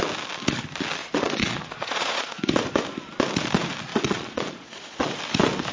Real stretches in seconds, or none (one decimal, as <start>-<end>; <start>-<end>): 0.0-1.0; 2.4-3.9; 5.2-5.7